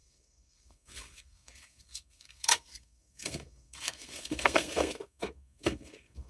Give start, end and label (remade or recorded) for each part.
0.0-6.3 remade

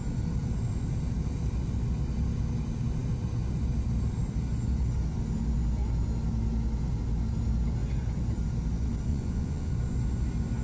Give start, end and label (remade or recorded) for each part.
0.0-9.1 recorded; 9.1-9.7 remade; 9.7-10.6 recorded

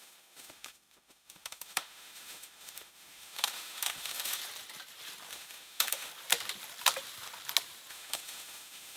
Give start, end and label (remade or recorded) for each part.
0.0-4.4 remade; 4.4-5.3 recorded; 5.3-6.1 remade; 6.1-7.9 recorded; 7.9-9.0 remade

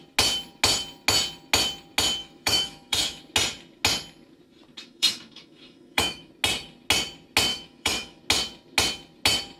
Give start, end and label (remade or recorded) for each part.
0.0-2.2 recorded; 2.2-3.2 remade; 3.2-4.8 recorded; 4.8-6.3 remade; 6.3-7.5 recorded; 7.5-8.2 remade; 8.2-9.6 recorded

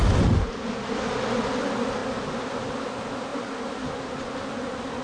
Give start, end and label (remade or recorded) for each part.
0.0-5.0 recorded

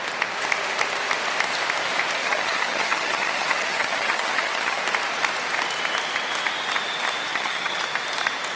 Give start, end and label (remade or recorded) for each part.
0.0-2.2 recorded; 2.2-4.8 remade; 4.8-7.3 recorded; 7.3-7.8 remade; 7.8-8.6 recorded

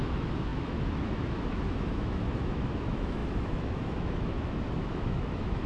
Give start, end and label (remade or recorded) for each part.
0.0-5.7 remade

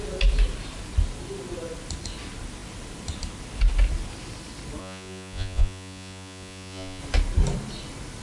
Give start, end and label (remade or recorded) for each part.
0.0-4.8 recorded; 4.8-7.0 remade; 7.0-8.2 recorded